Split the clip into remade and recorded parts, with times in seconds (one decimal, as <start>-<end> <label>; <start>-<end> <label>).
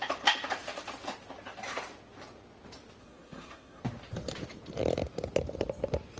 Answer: 0.0-3.0 recorded; 3.0-3.8 remade; 3.8-6.2 recorded